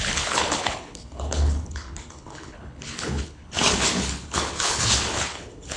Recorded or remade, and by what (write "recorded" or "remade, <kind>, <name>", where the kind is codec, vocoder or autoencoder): remade, codec, HILCodec